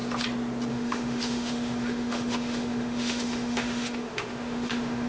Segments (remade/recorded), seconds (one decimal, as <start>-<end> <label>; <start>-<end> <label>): 0.0-0.7 recorded; 0.7-5.1 remade